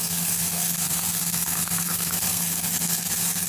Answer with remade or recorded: remade